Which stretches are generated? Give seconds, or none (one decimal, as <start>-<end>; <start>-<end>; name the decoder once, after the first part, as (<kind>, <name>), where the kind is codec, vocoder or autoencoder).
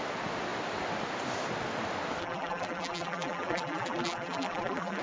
2.2-5.0 (vocoder, BigVGAN v2)